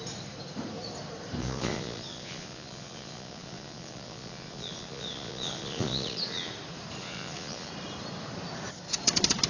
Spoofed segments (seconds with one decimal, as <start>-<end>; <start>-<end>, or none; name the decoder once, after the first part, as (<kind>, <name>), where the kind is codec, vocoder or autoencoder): 1.4-6.5 (vocoder, Vocos); 7.0-7.7